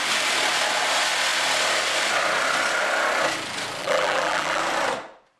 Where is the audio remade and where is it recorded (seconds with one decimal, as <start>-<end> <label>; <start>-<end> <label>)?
0.0-3.8 recorded; 3.8-4.6 remade; 4.6-5.4 recorded